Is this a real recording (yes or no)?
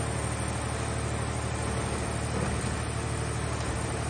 yes